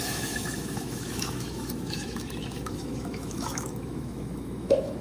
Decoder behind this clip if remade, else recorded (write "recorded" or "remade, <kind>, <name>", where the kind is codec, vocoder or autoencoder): remade, autoencoder, DAC-VAE